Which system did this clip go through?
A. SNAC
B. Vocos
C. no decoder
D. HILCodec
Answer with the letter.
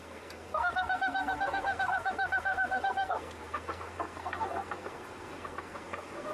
A